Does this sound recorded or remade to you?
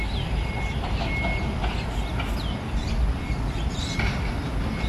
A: recorded